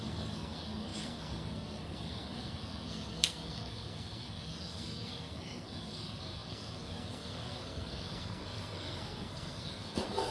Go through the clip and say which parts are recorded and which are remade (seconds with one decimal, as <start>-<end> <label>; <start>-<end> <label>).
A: 0.0-10.3 remade